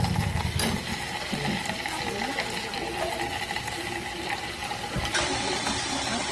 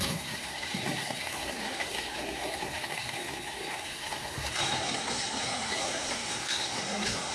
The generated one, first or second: second